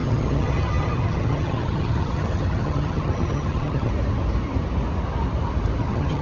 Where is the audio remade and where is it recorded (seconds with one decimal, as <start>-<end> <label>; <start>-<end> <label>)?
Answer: 0.0-3.9 remade; 3.9-5.8 recorded; 5.8-6.2 remade